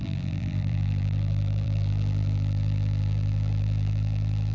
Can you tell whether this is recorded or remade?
remade